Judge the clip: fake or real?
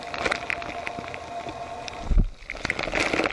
real